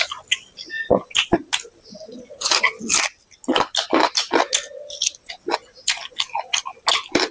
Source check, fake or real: real